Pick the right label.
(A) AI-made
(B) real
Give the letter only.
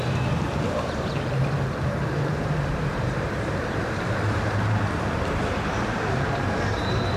A